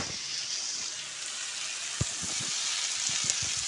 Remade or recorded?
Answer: recorded